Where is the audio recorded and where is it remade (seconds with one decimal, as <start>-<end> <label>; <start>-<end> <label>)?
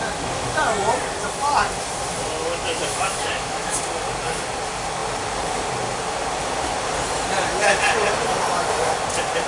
0.0-2.4 recorded; 2.4-3.8 remade; 3.8-9.5 recorded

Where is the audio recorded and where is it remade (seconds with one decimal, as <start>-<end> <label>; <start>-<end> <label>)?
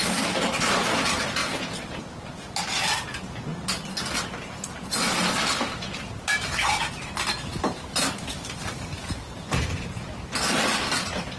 0.0-1.4 remade; 1.4-2.7 recorded; 2.7-3.5 remade; 3.5-5.1 recorded; 5.1-11.4 remade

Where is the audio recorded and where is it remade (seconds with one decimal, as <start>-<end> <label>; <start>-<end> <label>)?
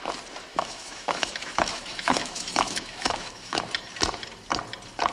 0.0-0.5 recorded; 0.5-3.6 remade; 3.6-5.1 recorded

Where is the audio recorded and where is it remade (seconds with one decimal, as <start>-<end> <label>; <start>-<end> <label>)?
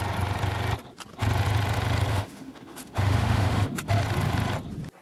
0.0-2.1 recorded; 2.1-3.9 remade; 3.9-5.0 recorded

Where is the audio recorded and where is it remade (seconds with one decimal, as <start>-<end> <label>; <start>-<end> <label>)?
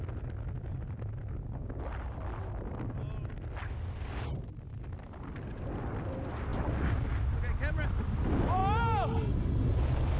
0.0-10.2 recorded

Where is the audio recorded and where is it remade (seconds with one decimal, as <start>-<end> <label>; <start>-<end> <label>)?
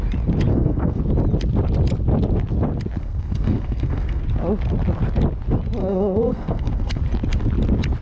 0.0-0.5 recorded; 0.5-1.0 remade; 1.0-3.0 recorded; 3.0-4.2 remade; 4.2-5.8 recorded; 5.8-7.0 remade; 7.0-8.0 recorded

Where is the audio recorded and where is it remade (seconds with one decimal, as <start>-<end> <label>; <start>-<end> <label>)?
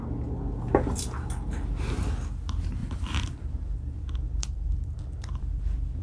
0.0-2.8 recorded; 2.8-6.0 remade